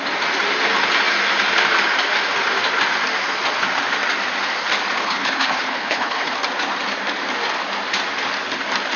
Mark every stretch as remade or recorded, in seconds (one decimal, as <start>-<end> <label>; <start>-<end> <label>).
0.0-5.0 recorded; 5.0-6.3 remade; 6.3-9.0 recorded